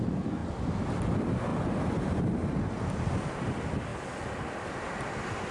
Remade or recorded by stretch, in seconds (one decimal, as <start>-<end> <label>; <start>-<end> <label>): 0.0-0.4 remade; 0.4-0.9 recorded; 0.9-1.5 remade; 1.5-2.7 recorded; 2.7-3.9 remade; 3.9-5.1 recorded; 5.1-5.5 remade